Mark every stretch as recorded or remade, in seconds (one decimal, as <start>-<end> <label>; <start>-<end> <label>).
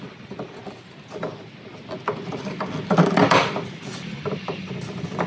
0.0-0.6 remade; 0.6-3.2 recorded; 3.2-5.3 remade